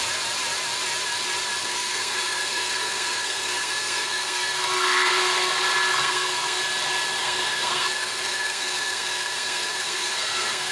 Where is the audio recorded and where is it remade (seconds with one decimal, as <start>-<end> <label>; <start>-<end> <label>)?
0.0-1.6 recorded; 1.6-5.5 remade; 5.5-5.9 recorded; 5.9-6.6 remade; 6.6-7.2 recorded; 7.2-10.7 remade